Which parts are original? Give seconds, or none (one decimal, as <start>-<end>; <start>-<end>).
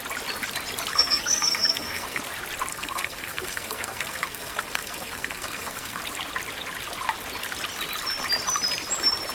0.0-0.9; 2.2-2.7; 6.0-9.3